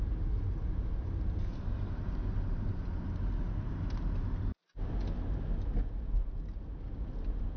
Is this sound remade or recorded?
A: recorded